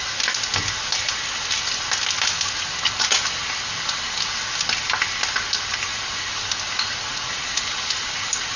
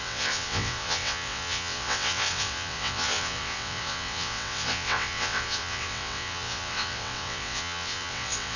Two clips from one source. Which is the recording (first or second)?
first